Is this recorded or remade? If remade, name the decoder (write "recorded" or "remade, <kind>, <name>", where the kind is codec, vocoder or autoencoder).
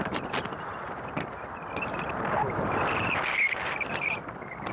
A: recorded